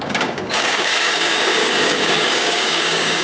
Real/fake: fake